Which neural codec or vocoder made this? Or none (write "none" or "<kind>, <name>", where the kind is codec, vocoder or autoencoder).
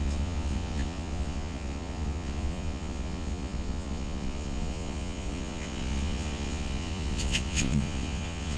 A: vocoder, Vocos